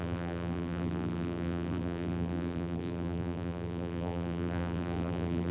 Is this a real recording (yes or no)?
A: no